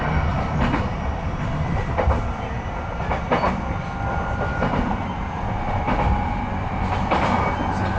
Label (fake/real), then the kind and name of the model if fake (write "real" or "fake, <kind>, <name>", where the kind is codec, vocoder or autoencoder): real